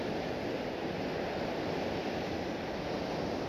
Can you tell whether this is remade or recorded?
recorded